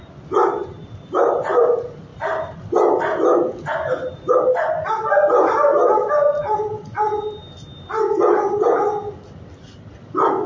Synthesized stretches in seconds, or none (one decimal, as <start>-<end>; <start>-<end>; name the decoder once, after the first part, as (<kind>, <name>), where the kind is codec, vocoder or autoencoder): none